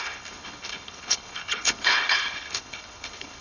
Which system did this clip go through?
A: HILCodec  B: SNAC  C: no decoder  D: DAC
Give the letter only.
A